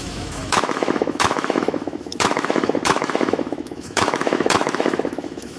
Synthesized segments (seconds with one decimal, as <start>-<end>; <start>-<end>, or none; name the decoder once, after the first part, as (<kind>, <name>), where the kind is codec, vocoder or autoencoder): 0.0-5.6 (autoencoder, DAC-VAE)